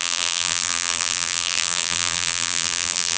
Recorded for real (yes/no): no